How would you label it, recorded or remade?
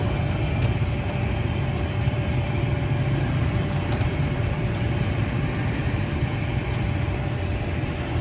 remade